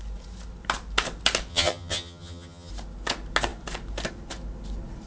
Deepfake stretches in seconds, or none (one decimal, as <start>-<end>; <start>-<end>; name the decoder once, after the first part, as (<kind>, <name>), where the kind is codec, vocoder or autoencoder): 1.5-2.7 (vocoder, HiFi-GAN)